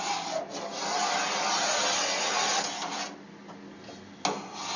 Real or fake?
real